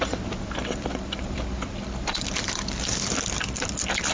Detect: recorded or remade remade